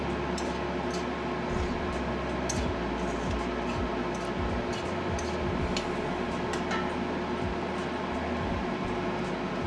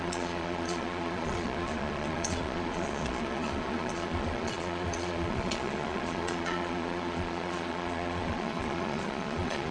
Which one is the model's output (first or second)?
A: second